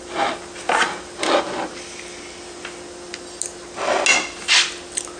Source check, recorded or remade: recorded